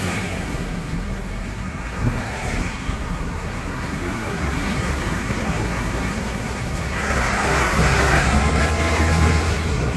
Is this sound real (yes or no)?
no